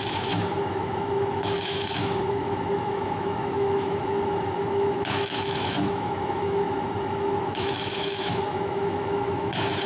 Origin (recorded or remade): remade